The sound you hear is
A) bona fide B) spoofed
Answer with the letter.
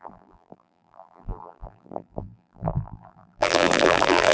B